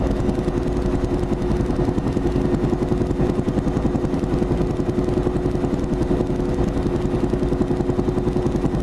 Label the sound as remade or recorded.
recorded